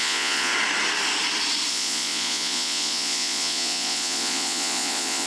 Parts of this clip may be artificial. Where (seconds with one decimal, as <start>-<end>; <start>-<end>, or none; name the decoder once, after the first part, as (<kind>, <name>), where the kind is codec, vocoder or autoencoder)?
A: 0.0-0.5 (vocoder, Vocos); 1.7-5.3

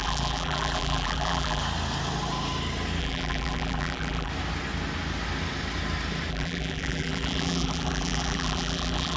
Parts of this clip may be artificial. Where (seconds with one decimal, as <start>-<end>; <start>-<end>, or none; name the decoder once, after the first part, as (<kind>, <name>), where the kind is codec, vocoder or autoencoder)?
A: 0.0-1.6 (vocoder, BigVGAN v2); 3.0-4.3; 6.3-9.2